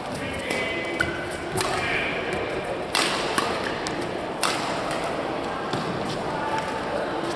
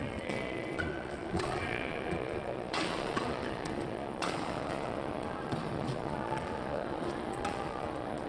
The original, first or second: first